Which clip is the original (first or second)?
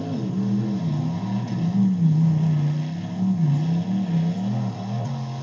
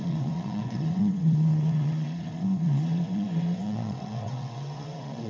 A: first